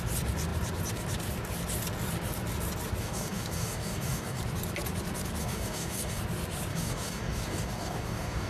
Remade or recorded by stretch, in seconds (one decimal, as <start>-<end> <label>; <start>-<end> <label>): 0.0-3.0 recorded; 3.0-4.4 remade; 4.4-5.4 recorded; 5.4-6.2 remade; 6.2-6.7 recorded; 6.7-8.5 remade